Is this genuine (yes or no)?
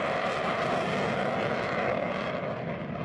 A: yes